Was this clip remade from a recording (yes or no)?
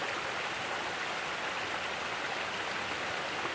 no